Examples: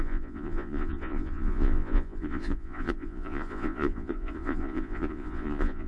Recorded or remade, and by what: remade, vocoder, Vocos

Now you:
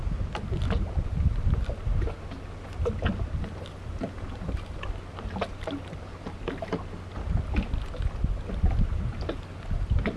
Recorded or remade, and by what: recorded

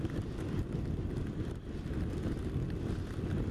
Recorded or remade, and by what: recorded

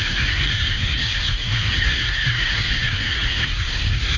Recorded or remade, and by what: remade, codec, SNAC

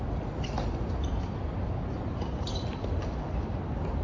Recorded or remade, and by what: recorded